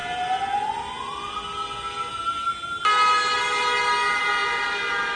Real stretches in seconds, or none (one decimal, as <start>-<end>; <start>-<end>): 0.0-5.2